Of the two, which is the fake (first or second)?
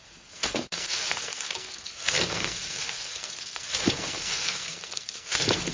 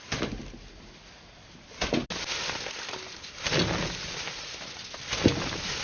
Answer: first